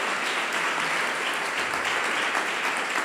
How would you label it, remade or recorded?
recorded